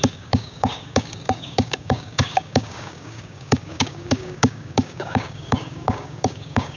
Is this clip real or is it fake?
fake